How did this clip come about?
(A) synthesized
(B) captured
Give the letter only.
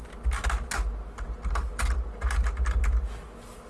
B